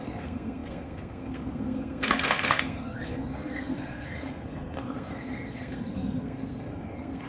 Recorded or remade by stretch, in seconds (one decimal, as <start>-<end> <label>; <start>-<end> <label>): 0.0-7.3 remade